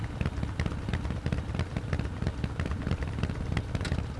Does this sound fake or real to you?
fake